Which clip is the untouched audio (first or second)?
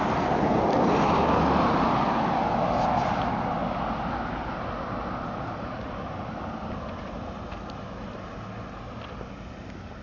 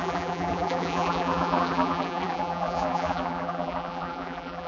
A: first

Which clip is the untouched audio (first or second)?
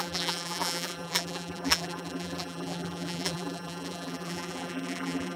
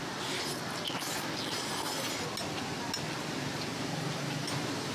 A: second